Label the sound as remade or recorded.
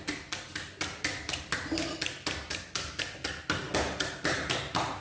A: recorded